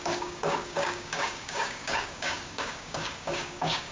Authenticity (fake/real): fake